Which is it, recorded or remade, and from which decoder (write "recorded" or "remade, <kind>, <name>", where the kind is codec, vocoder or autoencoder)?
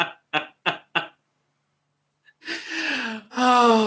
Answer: recorded